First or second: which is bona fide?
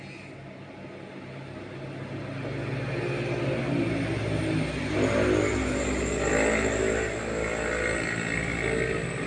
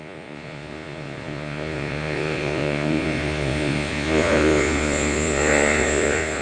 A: first